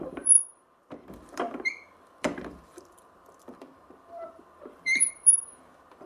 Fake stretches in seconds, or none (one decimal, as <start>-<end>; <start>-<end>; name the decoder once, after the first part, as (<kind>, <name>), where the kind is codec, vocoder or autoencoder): 0.0-0.4 (vocoder, BigVGAN v2); 1.1-6.1